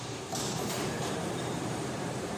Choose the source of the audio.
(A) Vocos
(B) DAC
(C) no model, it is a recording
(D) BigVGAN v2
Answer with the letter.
D